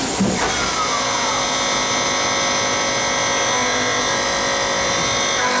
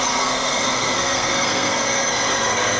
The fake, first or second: second